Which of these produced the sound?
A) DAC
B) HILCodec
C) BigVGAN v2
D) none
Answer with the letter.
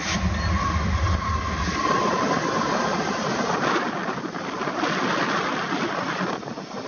C